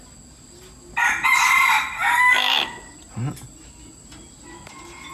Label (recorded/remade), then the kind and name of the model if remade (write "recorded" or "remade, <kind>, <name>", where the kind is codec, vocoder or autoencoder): recorded